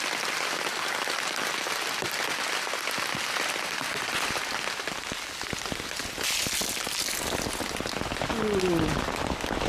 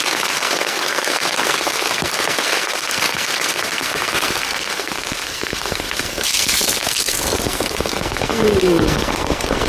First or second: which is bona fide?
first